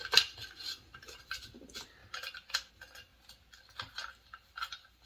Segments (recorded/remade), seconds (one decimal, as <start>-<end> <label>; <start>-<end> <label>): 0.0-3.1 remade; 3.1-4.1 recorded; 4.1-5.1 remade